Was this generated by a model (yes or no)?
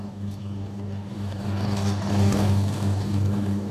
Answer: yes